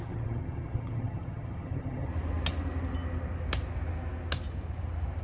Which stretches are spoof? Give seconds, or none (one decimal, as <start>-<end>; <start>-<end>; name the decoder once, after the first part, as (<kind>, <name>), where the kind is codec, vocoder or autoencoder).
0.0-2.1 (vocoder, HiFi-GAN)